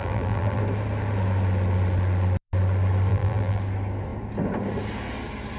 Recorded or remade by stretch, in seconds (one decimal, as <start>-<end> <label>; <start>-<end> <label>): 0.0-0.6 remade; 0.6-3.1 recorded; 3.1-3.6 remade; 3.6-5.6 recorded